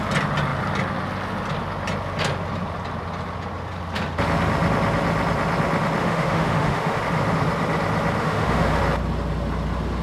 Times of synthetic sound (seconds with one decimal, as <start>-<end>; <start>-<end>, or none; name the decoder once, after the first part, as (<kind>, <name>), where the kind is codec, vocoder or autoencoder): 6.0-7.0 (autoencoder, DAC-VAE); 8.2-8.8